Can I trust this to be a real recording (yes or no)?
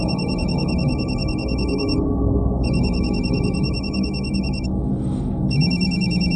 no